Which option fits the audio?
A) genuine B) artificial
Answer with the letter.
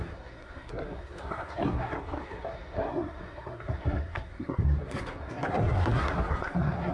B